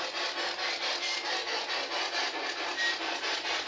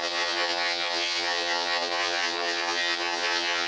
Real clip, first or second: first